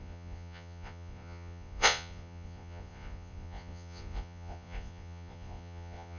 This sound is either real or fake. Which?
fake